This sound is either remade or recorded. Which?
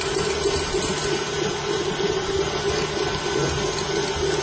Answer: recorded